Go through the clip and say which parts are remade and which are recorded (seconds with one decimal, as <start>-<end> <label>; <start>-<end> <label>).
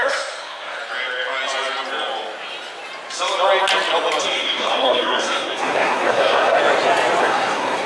0.0-0.8 remade; 0.8-4.2 recorded; 4.2-6.6 remade; 6.6-7.2 recorded; 7.2-7.9 remade